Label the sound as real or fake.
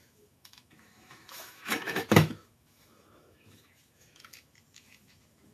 fake